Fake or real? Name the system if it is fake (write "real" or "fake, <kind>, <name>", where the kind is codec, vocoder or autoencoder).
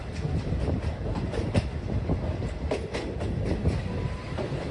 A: fake, vocoder, BigVGAN v2